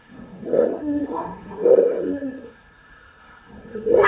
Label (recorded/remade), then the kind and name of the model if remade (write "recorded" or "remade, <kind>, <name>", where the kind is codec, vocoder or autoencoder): remade, codec, SNAC